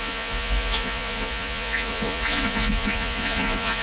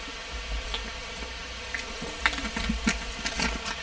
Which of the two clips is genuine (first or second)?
second